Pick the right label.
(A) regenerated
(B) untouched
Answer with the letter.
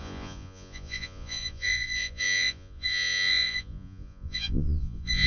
A